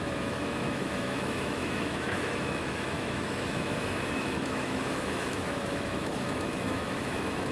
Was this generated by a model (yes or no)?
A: yes